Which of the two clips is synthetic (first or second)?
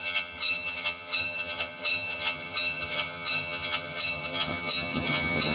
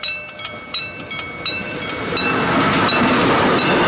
first